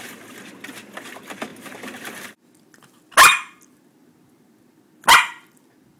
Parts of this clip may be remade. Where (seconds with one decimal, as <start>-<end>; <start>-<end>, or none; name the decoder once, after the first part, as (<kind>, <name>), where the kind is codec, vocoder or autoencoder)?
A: none